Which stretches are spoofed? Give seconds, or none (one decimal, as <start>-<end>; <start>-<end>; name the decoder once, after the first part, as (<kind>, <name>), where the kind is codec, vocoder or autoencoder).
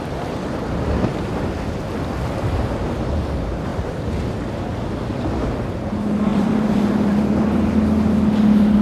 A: 3.7-5.3 (vocoder, BigVGAN v2); 6.3-7.4